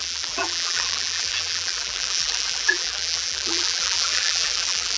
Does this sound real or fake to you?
fake